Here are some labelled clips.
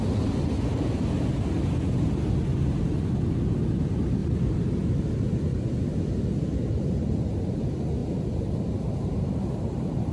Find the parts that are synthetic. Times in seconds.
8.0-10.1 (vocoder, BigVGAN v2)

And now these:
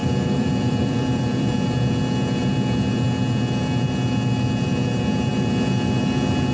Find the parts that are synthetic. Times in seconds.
0.0-1.5 (vocoder, BigVGAN v2)

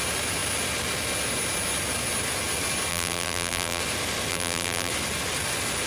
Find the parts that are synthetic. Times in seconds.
2.9-3.8 (vocoder, BigVGAN v2); 4.3-4.9

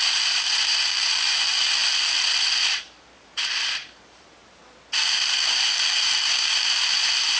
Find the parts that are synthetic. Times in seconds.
0.0-1.8 (vocoder, BigVGAN v2); 3.2-4.6; 5.5-7.4

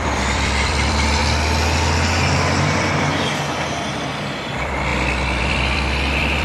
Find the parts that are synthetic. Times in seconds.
0.0-1.2 (vocoder, BigVGAN v2); 2.6-3.1; 4.5-4.9; 5.4-6.4

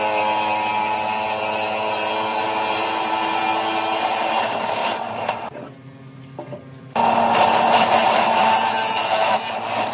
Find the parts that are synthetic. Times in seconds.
2.3-3.4 (vocoder, BigVGAN v2); 4.8-5.3